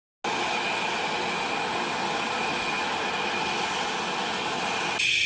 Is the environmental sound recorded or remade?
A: recorded